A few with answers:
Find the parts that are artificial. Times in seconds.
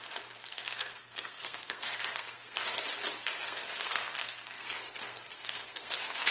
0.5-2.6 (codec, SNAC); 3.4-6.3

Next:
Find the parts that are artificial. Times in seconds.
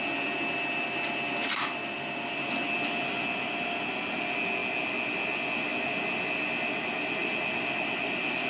none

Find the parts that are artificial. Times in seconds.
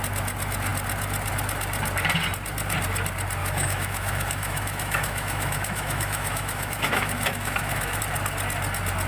3.4-8.0 (autoencoder, DAC-VAE)